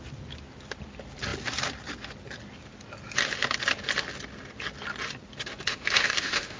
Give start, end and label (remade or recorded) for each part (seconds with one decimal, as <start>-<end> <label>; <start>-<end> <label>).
0.0-5.7 recorded; 5.7-6.6 remade

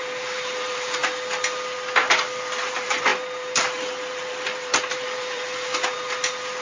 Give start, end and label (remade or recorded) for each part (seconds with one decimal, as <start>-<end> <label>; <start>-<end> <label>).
0.0-1.0 remade; 1.0-2.4 recorded; 2.4-6.6 remade